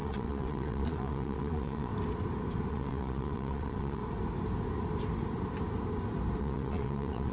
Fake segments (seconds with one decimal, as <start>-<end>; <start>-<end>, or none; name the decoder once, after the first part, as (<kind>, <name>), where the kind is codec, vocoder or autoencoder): 0.0-1.9 (vocoder, WaveNeXt); 2.7-4.0; 6.4-7.3